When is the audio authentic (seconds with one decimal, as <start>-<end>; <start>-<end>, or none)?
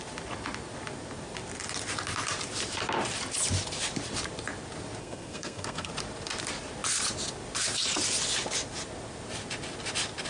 0.0-5.0; 5.9-10.3